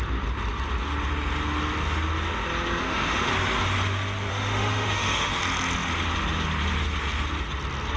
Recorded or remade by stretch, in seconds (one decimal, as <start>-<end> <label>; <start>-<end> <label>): 0.0-2.8 recorded; 2.8-3.3 remade; 3.3-4.3 recorded; 4.3-5.3 remade; 5.3-8.0 recorded